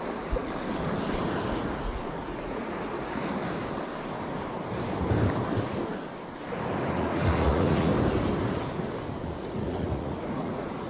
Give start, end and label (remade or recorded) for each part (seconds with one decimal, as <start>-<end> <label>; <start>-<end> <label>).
0.0-0.4 remade; 0.4-1.5 recorded; 1.5-3.2 remade; 3.2-6.9 recorded; 6.9-7.9 remade; 7.9-9.2 recorded; 9.2-10.9 remade